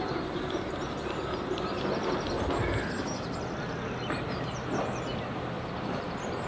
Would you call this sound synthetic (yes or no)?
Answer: no